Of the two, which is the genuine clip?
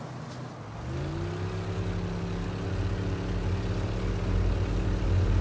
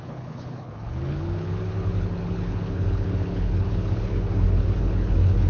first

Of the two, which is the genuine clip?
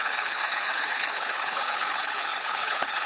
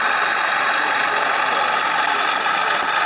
second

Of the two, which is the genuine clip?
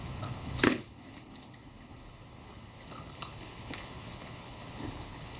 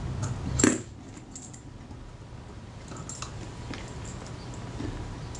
second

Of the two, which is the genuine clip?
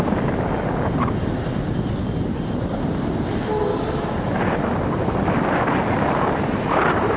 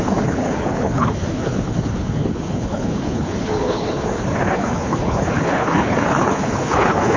first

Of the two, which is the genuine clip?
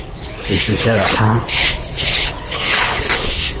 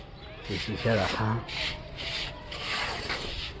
second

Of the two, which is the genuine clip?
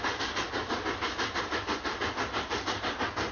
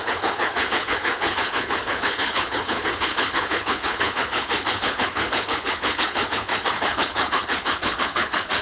first